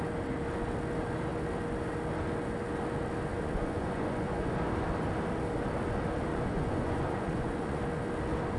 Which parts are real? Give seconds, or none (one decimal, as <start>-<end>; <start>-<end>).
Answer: 0.0-3.3; 4.5-6.3; 7.8-8.6